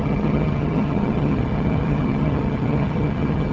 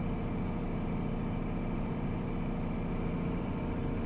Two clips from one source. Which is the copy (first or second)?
first